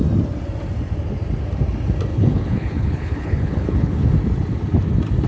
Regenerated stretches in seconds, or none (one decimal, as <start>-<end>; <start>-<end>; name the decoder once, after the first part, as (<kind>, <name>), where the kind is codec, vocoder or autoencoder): 2.1-4.1 (codec, HILCodec)